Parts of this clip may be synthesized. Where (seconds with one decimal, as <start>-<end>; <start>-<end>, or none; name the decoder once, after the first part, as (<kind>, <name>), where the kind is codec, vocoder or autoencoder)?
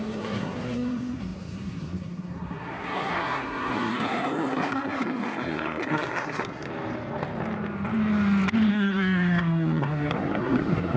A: 0.0-6.7 (codec, SNAC); 8.7-11.0